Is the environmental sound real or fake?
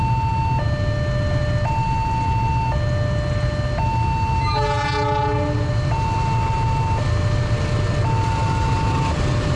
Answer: real